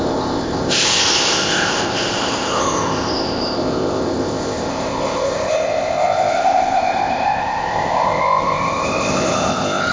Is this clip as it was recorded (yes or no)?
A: no